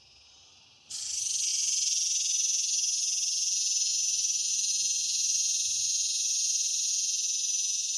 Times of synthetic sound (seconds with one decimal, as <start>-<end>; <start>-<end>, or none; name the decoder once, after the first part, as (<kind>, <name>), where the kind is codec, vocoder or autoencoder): none